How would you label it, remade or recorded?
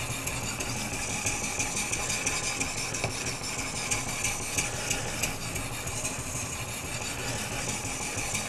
recorded